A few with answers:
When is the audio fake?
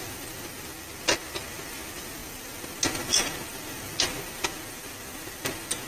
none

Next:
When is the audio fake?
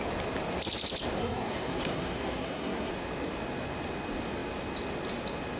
1.2-2.9 (codec, SNAC)